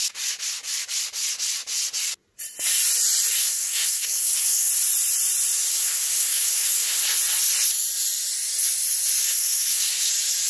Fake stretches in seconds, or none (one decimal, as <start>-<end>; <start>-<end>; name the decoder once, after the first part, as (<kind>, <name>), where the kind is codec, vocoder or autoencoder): 3.4-4.7 (codec, SNAC); 5.7-7.0; 9.2-10.1